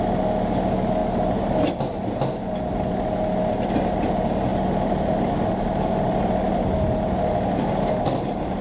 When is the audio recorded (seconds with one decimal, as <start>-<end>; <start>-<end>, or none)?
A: 0.0-8.6